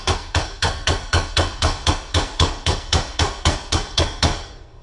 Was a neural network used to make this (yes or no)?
yes